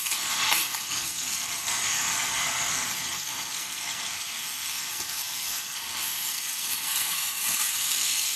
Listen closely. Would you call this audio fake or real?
fake